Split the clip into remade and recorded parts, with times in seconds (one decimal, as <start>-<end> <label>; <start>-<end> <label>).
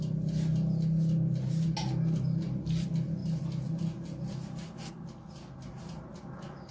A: 0.0-6.7 recorded